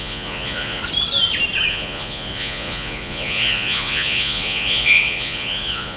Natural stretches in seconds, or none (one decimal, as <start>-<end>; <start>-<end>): 0.8-1.7